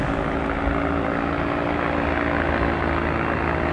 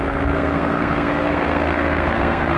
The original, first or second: first